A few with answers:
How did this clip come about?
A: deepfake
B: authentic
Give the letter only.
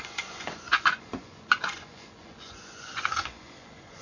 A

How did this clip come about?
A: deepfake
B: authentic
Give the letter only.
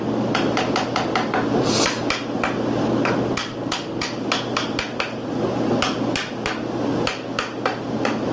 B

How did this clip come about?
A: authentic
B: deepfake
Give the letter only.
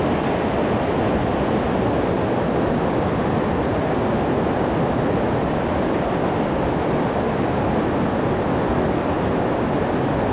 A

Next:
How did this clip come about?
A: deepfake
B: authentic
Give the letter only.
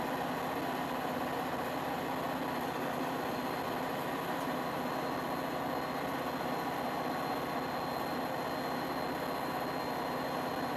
B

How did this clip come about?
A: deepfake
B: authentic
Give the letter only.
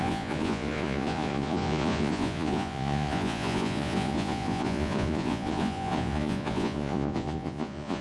A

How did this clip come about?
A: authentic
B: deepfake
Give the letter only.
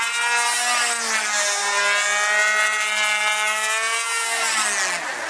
A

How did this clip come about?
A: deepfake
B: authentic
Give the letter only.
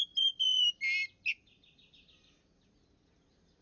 B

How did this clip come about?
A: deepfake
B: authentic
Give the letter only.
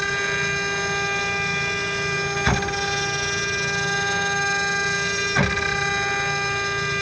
B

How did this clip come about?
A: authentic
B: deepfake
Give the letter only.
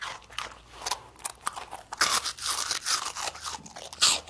A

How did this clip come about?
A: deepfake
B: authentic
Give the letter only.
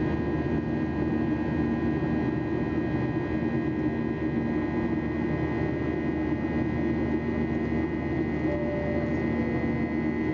B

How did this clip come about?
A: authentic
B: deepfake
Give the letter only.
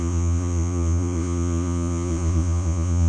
B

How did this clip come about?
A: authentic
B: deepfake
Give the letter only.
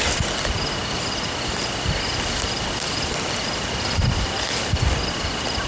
A